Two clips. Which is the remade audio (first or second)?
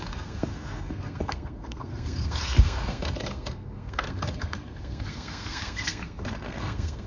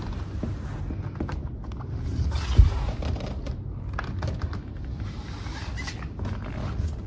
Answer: first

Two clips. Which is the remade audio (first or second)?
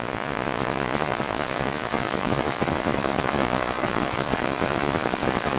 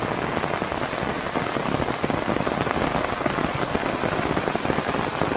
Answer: first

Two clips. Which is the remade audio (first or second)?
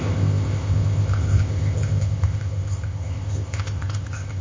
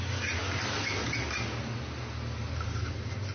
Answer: first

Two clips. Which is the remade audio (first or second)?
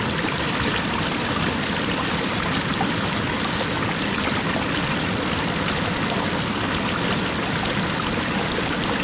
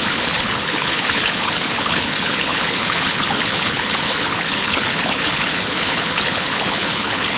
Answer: second